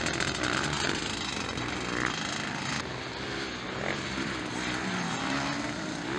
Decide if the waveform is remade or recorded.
recorded